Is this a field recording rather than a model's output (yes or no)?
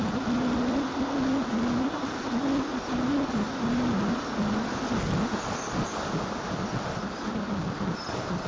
yes